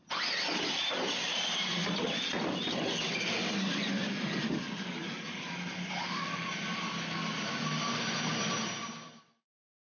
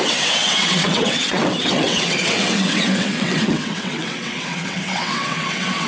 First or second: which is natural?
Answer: first